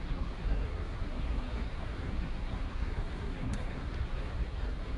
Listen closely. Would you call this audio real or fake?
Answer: fake